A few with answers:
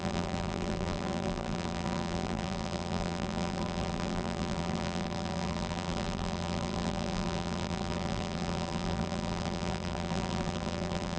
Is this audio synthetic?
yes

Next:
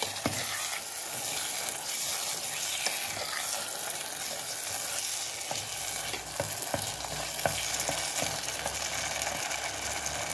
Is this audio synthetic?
no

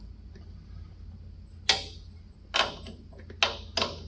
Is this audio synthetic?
no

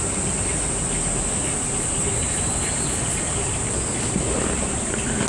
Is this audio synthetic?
no